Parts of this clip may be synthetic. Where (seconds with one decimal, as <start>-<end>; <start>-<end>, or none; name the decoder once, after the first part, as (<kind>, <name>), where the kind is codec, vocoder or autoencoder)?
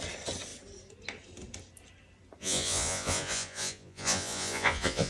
2.4-5.1 (vocoder, Vocos)